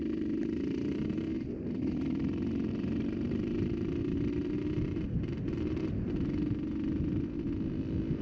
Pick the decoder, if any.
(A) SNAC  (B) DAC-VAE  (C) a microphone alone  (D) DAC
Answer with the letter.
C